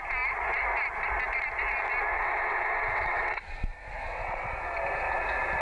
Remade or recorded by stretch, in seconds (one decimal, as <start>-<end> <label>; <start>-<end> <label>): 0.0-2.1 recorded; 2.1-3.4 remade; 3.4-3.9 recorded; 3.9-4.5 remade; 4.5-5.6 recorded